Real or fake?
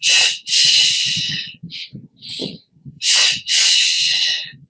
fake